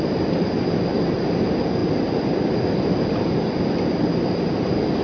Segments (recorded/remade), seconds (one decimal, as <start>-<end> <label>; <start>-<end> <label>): 0.0-5.0 recorded